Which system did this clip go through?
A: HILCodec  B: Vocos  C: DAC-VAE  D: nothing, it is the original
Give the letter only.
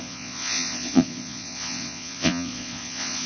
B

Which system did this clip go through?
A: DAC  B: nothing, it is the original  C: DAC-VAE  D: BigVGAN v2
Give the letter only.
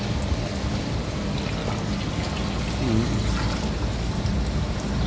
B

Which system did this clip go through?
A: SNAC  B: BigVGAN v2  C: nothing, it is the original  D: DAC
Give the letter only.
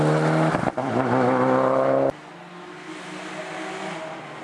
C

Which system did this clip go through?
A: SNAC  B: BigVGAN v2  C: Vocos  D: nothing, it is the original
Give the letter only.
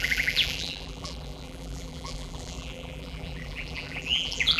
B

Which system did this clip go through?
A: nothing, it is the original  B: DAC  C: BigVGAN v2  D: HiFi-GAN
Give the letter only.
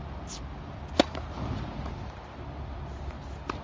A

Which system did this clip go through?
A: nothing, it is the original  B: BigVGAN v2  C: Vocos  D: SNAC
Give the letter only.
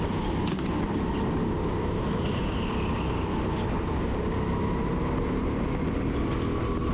A